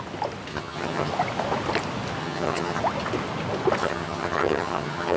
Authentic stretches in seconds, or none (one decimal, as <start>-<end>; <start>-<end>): 0.0-0.5; 1.1-2.2; 2.8-3.8